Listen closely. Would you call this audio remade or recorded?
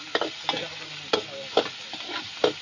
recorded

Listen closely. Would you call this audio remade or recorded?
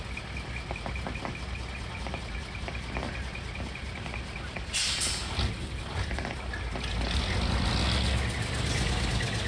recorded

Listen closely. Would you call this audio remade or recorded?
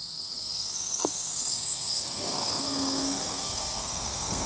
remade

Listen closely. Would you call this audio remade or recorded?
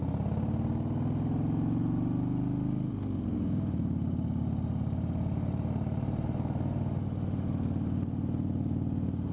recorded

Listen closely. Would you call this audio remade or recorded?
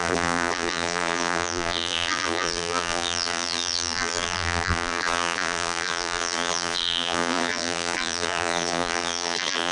remade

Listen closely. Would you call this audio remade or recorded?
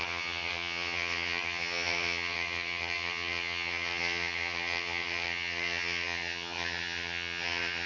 remade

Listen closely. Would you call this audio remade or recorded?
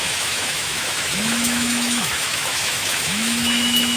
remade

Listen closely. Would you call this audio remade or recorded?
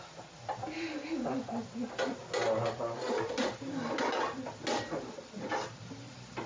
recorded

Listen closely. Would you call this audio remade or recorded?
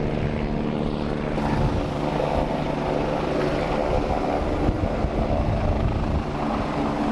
recorded